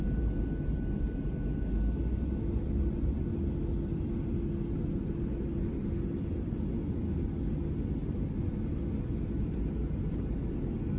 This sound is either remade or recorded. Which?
recorded